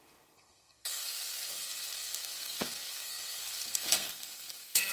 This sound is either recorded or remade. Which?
remade